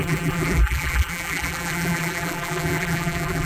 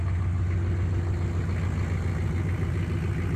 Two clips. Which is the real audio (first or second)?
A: second